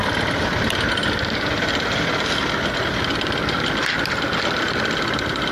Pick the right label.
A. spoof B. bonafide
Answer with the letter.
B